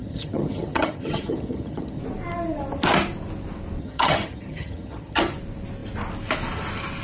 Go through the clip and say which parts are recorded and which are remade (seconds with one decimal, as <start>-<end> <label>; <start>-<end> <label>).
0.0-2.0 remade; 2.0-3.8 recorded; 3.8-5.2 remade; 5.2-7.0 recorded